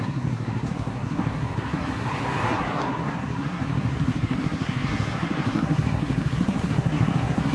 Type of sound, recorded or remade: remade